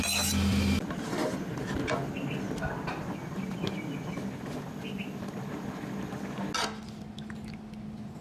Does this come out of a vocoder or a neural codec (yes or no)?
no